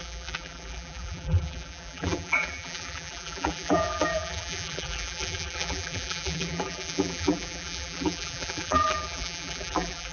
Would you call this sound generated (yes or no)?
yes